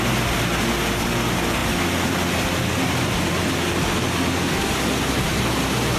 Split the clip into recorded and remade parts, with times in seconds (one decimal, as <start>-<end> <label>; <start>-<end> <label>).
0.0-6.0 recorded